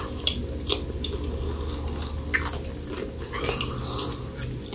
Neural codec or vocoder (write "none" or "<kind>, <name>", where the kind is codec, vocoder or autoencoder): none